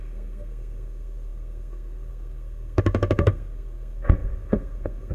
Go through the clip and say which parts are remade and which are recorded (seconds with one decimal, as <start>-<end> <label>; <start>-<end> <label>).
0.0-5.1 remade